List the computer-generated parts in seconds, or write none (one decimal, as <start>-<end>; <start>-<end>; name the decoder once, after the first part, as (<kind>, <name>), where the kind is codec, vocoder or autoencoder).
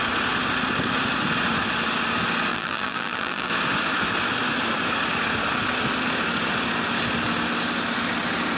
2.5-3.5 (vocoder, BigVGAN v2)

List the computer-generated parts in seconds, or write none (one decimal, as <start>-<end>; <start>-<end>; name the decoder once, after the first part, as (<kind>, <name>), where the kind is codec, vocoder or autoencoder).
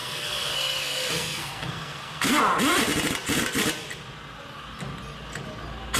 0.0-2.4 (codec, SNAC)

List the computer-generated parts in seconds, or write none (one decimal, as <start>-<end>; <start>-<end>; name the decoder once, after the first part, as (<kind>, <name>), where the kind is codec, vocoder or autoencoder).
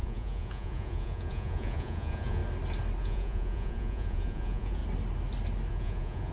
0.0-2.4 (vocoder, Vocos); 3.0-4.8; 5.7-6.3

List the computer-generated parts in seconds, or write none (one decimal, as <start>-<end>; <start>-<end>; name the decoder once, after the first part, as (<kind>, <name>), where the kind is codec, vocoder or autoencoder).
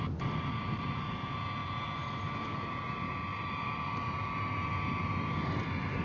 none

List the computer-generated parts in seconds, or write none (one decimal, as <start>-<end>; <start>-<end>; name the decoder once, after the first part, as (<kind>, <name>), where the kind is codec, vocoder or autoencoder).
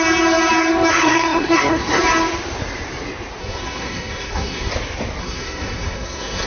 0.9-2.0 (codec, SNAC); 3.4-4.7; 5.2-6.5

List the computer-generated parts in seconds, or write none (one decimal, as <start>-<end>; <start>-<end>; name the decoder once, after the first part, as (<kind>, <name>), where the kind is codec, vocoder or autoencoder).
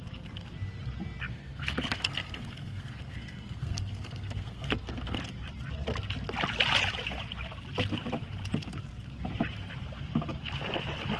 1.3-5.2 (codec, SNAC)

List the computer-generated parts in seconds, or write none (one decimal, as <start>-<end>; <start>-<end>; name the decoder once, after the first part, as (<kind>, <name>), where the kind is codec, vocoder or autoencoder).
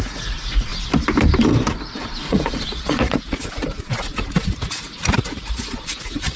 0.0-0.7 (vocoder, Vocos); 2.2-6.4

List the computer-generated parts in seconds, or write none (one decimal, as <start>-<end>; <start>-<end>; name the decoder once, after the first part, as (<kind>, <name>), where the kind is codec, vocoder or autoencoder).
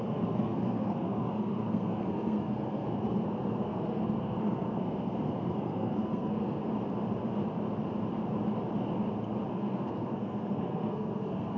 0.0-6.6 (codec, SNAC); 9.5-11.6